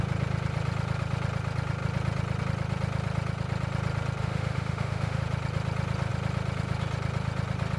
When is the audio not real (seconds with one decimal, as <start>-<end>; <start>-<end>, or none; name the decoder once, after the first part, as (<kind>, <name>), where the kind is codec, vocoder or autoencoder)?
4.2-5.2 (autoencoder, DAC-VAE)